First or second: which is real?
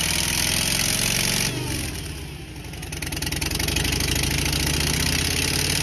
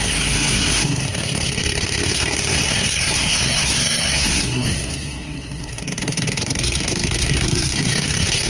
first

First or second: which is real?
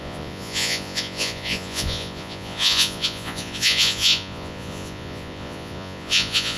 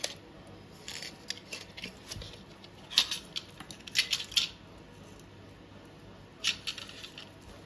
second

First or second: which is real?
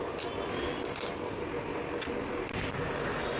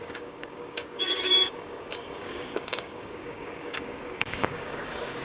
first